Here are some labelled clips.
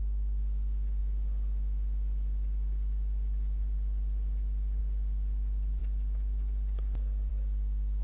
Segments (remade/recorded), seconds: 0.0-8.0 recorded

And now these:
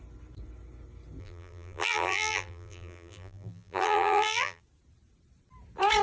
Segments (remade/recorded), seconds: 0.0-1.2 recorded; 1.2-4.6 remade; 4.6-6.0 recorded

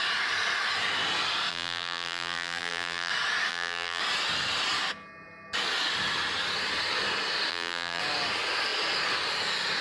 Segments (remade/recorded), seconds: 0.0-1.5 recorded; 1.5-3.1 remade; 3.1-3.5 recorded; 3.5-4.0 remade; 4.0-7.5 recorded; 7.5-8.0 remade; 8.0-9.8 recorded

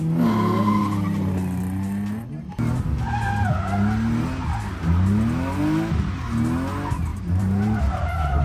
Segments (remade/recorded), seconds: 0.0-7.1 recorded; 7.1-8.4 remade

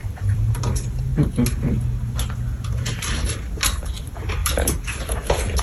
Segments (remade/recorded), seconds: 0.0-1.1 remade; 1.1-3.8 recorded; 3.8-5.6 remade

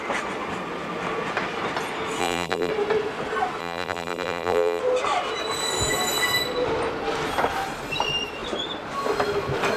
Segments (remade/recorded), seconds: 0.0-2.2 recorded; 2.2-2.7 remade; 2.7-3.6 recorded; 3.6-4.8 remade; 4.8-9.8 recorded